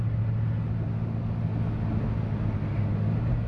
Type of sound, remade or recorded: recorded